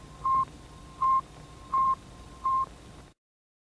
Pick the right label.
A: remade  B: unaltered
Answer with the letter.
B